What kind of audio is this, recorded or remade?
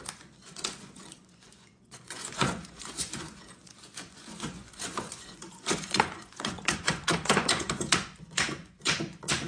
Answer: remade